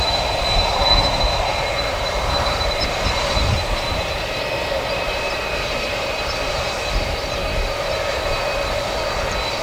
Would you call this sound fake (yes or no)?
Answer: yes